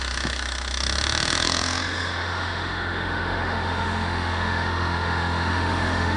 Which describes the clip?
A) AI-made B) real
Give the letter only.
A